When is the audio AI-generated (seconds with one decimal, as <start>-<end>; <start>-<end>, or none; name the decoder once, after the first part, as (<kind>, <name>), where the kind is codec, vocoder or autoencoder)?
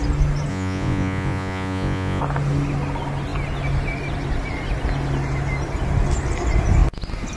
0.5-2.2 (vocoder, Vocos)